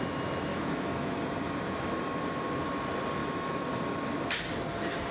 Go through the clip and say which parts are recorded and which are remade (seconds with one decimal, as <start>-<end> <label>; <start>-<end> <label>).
0.0-0.5 recorded; 0.5-1.2 remade; 1.2-3.2 recorded; 3.2-3.7 remade; 3.7-5.1 recorded